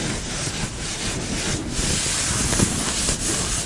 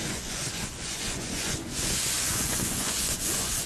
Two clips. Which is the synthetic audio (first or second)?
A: second